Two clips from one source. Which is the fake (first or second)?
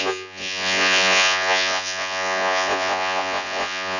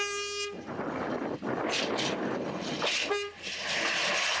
first